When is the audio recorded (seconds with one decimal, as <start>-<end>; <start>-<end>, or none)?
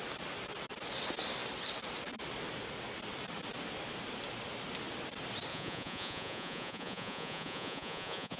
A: 0.0-5.5